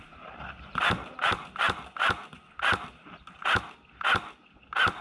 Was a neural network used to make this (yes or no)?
no